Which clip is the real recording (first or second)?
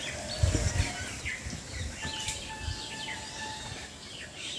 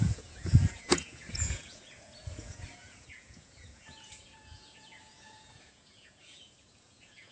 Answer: first